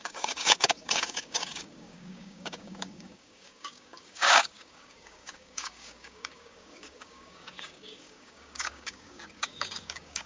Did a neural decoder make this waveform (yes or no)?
yes